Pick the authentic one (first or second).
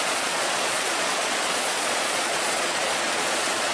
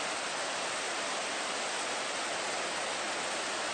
second